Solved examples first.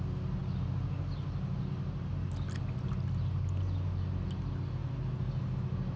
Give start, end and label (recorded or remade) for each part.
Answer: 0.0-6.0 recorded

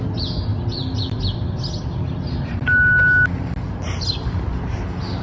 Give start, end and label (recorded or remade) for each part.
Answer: 0.0-0.5 recorded; 0.5-2.5 remade; 2.5-5.2 recorded

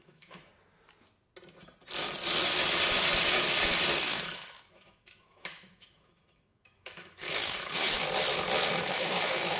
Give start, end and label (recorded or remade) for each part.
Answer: 0.0-0.5 remade; 0.5-4.0 recorded; 4.0-8.0 remade; 8.0-8.7 recorded; 8.7-9.6 remade

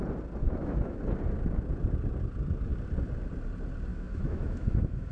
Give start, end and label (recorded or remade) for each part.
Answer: 0.0-0.4 recorded; 0.4-1.0 remade; 1.0-3.9 recorded; 3.9-5.1 remade

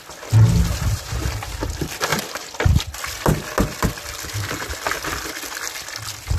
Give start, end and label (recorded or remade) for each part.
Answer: 0.0-2.1 recorded; 2.1-2.7 remade; 2.7-6.4 recorded

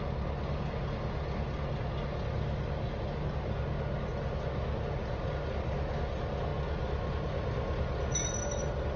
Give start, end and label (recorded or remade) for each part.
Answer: 0.0-9.0 recorded

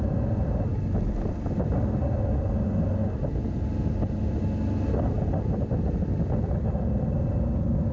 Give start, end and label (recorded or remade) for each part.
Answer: 0.0-7.9 recorded